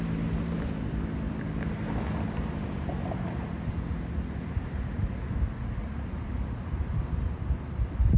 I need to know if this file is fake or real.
real